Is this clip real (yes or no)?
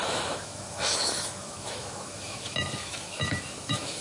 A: no